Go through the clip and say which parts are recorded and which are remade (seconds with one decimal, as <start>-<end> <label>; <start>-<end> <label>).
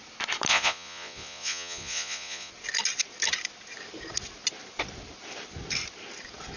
0.0-0.5 recorded; 0.5-2.5 remade; 2.5-6.6 recorded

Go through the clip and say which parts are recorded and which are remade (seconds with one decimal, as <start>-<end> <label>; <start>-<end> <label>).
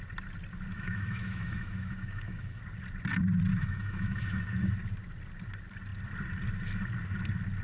0.0-0.7 recorded; 0.7-2.6 remade; 2.6-3.5 recorded; 3.5-4.7 remade; 4.7-7.6 recorded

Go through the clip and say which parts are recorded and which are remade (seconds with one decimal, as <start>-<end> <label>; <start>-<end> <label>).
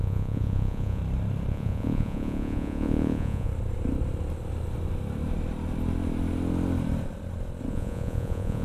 0.0-1.0 remade; 1.0-1.5 recorded; 1.5-3.5 remade; 3.5-7.7 recorded; 7.7-8.6 remade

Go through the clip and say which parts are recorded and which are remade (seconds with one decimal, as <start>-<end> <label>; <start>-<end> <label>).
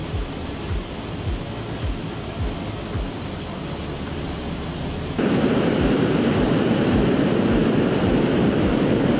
0.0-4.1 recorded; 4.1-9.2 remade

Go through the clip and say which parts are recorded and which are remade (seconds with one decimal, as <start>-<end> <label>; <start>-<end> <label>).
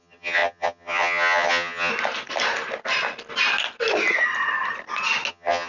0.0-1.9 remade; 1.9-5.3 recorded; 5.3-5.7 remade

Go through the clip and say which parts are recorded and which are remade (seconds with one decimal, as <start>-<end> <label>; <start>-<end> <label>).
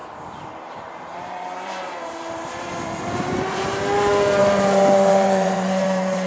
0.0-3.8 remade; 3.8-4.4 recorded; 4.4-6.3 remade